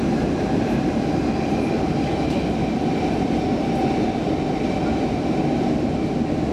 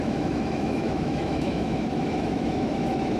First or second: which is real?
first